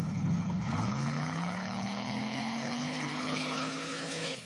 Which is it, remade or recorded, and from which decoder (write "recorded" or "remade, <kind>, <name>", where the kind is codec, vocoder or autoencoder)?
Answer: remade, codec, HILCodec